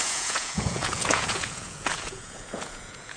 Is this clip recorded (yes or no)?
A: no